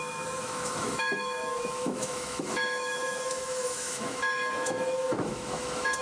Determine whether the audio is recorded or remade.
remade